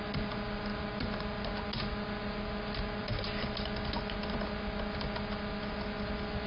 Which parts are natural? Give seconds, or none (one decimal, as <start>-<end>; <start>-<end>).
0.0-6.5